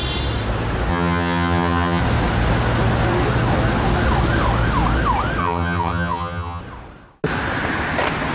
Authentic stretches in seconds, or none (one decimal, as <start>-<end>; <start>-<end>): 0.0-0.9; 2.0-5.4; 6.6-8.3